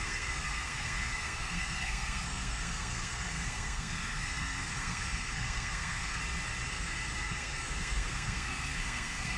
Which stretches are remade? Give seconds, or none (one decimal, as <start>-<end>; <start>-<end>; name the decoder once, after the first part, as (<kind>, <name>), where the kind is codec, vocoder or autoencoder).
0.0-6.2 (codec, SNAC); 6.7-9.4